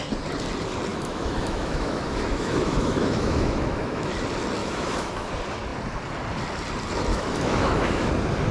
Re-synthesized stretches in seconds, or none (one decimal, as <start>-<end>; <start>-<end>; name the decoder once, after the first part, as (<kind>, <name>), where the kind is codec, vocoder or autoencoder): 0.9-4.1 (autoencoder, DAC-VAE); 4.6-5.3; 7.1-8.1